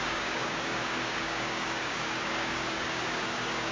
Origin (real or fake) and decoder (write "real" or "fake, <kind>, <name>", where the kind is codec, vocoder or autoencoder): fake, codec, DAC